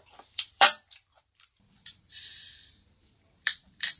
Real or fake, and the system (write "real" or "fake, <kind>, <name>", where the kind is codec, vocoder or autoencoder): fake, vocoder, BigVGAN v2